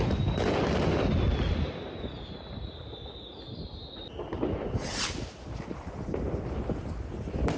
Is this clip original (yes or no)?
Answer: yes